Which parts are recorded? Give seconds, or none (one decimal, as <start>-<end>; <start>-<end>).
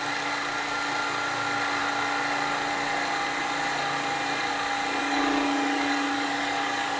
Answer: 0.0-5.0